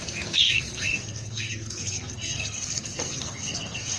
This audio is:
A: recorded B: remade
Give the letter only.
B